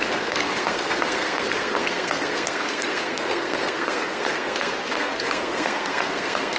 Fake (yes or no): yes